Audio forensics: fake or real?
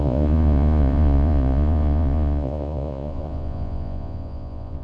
fake